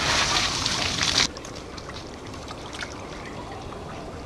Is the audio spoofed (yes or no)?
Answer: no